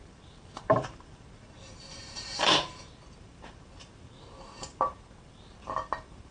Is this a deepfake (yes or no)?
yes